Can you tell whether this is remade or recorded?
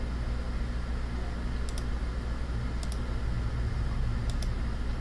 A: recorded